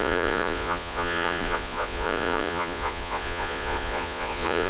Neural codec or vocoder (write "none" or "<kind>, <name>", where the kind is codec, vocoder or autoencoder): vocoder, Vocos